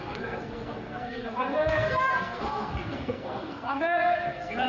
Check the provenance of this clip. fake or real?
fake